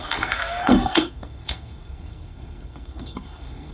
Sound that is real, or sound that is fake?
fake